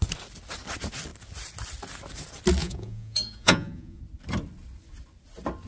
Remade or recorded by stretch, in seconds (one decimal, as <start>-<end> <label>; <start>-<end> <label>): 0.0-2.6 recorded; 2.6-4.0 remade; 4.0-5.7 recorded